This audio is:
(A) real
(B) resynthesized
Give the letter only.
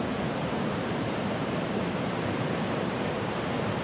B